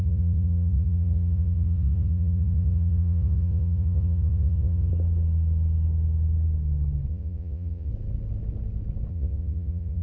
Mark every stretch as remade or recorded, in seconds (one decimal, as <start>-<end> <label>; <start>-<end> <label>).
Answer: 0.0-4.9 remade; 4.9-7.1 recorded; 7.1-7.9 remade; 7.9-9.1 recorded; 9.1-10.0 remade